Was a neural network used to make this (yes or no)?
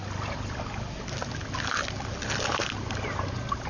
no